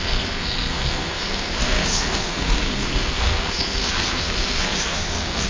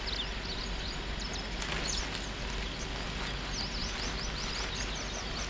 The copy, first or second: first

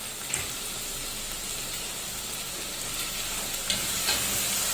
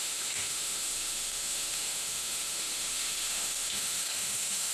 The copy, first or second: second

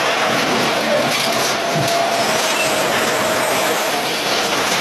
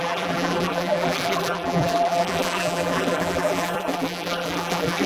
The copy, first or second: second